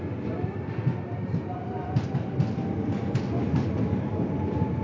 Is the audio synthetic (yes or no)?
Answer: no